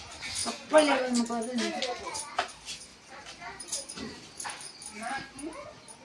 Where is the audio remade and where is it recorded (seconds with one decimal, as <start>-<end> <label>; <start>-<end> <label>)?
0.0-2.9 recorded; 2.9-4.5 remade; 4.5-6.0 recorded